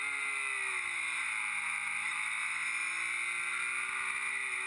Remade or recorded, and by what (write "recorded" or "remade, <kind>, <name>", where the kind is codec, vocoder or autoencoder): recorded